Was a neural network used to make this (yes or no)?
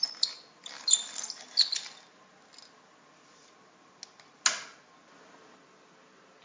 no